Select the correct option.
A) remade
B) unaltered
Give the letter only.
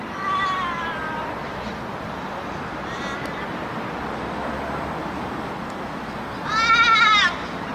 B